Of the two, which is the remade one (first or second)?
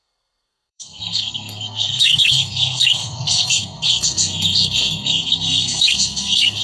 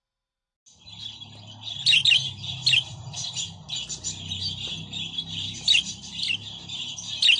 first